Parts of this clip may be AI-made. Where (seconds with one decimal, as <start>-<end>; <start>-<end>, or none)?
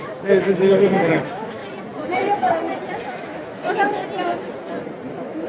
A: 0.0-1.6; 3.2-4.0; 5.1-5.5